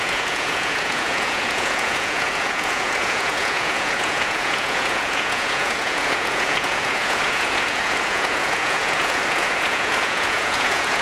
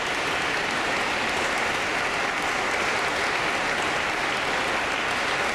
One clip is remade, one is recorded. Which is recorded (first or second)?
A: second